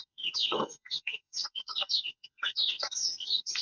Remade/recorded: remade